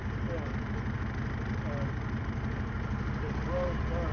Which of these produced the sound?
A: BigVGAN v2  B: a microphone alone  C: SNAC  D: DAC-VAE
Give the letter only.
B